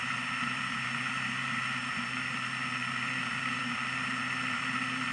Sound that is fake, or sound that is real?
fake